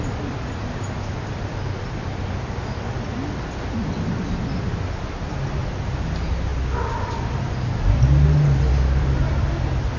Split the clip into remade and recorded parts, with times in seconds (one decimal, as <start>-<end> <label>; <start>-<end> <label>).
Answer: 0.0-10.0 recorded

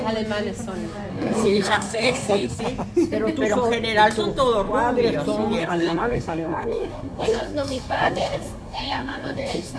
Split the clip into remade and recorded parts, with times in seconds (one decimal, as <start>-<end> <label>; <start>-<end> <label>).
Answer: 0.0-1.1 recorded; 1.1-2.6 remade; 2.6-5.6 recorded; 5.6-9.8 remade

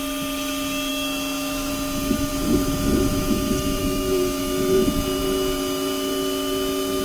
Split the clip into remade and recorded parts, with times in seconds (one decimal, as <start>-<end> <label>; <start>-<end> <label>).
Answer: 0.0-0.9 recorded; 0.9-1.7 remade; 1.7-3.8 recorded; 3.8-4.4 remade; 4.4-7.0 recorded

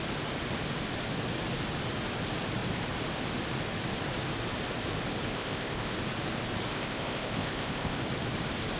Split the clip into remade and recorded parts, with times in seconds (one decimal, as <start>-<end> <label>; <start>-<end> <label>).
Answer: 0.0-5.3 recorded; 5.3-5.9 remade; 5.9-6.7 recorded; 6.7-8.0 remade; 8.0-8.8 recorded

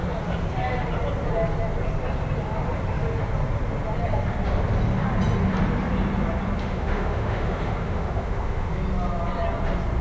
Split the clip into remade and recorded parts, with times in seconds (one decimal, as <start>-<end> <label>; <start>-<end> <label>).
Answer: 0.0-6.6 recorded; 6.6-8.7 remade; 8.7-10.0 recorded

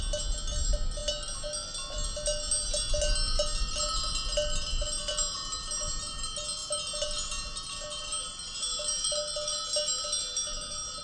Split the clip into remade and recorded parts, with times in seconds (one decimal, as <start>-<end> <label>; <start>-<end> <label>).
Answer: 0.0-11.0 recorded